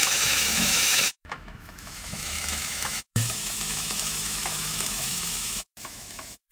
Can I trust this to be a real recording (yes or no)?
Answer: no